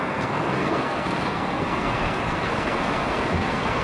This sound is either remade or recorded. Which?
remade